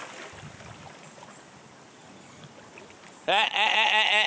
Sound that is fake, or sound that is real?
real